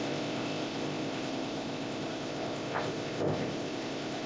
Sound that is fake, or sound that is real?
fake